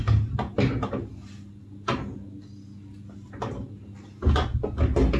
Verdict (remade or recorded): recorded